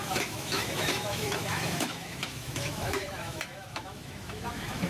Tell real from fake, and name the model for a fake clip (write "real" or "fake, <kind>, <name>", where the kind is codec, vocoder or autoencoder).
fake, autoencoder, DAC-VAE